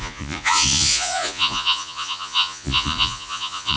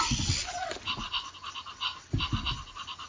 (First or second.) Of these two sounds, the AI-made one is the first